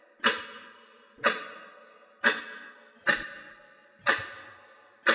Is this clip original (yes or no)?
yes